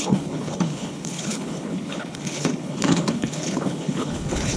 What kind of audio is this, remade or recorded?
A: remade